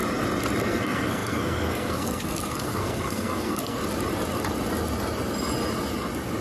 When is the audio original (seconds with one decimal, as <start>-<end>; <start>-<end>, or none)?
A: 0.0-0.6; 3.8-6.4

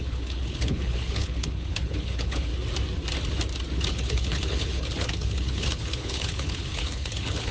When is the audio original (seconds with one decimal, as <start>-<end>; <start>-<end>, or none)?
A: 2.5-3.9

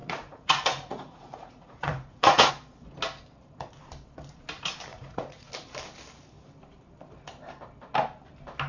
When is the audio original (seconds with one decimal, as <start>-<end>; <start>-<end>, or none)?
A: 2.5-4.9; 5.5-8.7

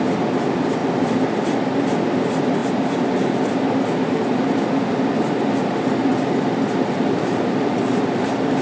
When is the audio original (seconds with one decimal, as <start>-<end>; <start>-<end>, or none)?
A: 6.1-7.1

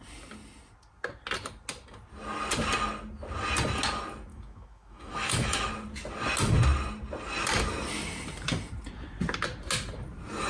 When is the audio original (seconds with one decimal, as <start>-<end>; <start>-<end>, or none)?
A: 0.0-4.3; 5.7-10.5

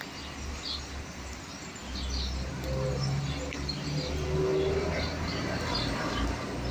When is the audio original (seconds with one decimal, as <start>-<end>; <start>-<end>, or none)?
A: 0.0-6.7

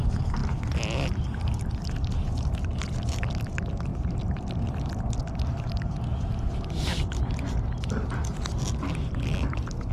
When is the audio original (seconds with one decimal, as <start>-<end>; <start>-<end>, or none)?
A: 0.0-3.9; 4.5-9.9

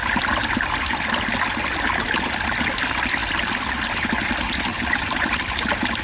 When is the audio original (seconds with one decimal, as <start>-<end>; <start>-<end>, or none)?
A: 0.0-4.7; 5.4-6.0